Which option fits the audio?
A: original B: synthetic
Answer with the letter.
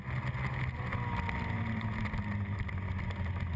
A